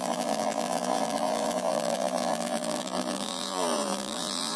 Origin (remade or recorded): remade